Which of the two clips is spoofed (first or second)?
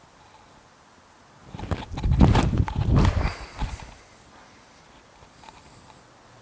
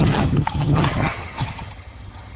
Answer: second